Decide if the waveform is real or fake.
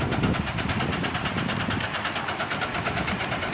real